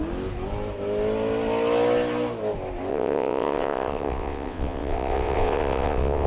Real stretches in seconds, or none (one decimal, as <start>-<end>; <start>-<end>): 0.0-2.9